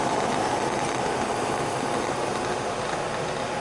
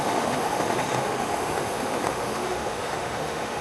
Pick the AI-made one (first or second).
second